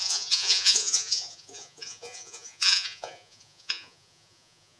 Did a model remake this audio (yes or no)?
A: yes